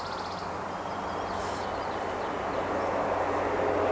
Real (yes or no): yes